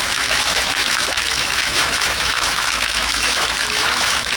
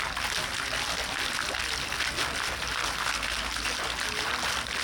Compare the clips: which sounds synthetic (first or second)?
first